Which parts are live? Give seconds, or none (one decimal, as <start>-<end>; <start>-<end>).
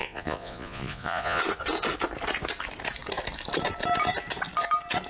1.4-5.1